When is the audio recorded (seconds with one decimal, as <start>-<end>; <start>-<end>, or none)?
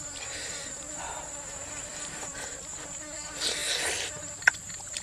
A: 0.0-1.9; 2.6-3.6; 4.2-5.0